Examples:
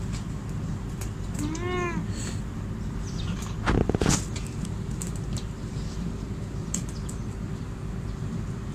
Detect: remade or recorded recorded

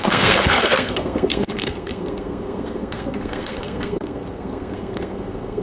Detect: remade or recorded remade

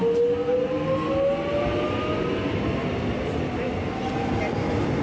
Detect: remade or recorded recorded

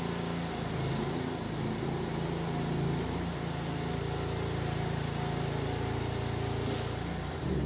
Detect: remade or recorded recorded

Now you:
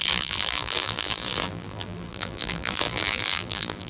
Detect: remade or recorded remade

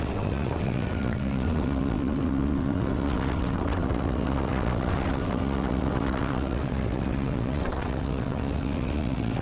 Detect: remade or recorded remade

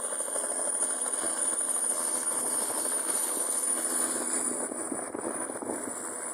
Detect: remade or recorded recorded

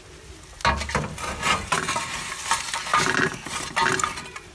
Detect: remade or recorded recorded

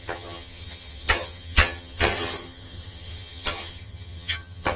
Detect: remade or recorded remade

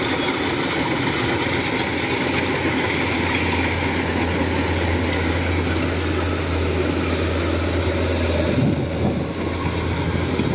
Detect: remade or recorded recorded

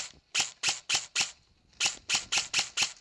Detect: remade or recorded recorded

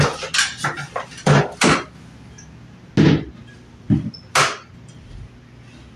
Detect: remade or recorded recorded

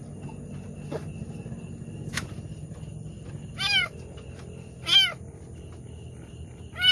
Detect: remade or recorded recorded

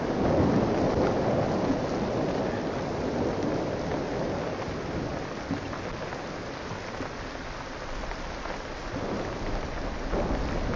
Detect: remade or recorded recorded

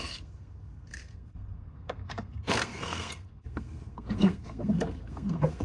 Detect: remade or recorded remade